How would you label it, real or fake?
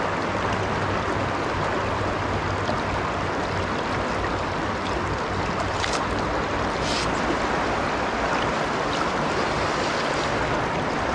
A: real